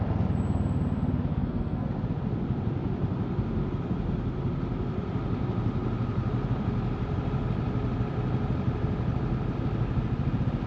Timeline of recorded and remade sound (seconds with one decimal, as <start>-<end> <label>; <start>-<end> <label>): 0.0-1.3 recorded; 1.3-1.9 remade; 1.9-10.7 recorded